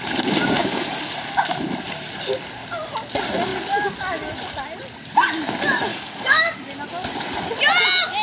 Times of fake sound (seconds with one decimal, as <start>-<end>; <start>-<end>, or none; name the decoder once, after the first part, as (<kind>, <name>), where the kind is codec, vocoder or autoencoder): 0.6-1.1 (codec, DAC); 5.9-6.7